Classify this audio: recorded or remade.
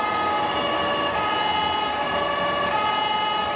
recorded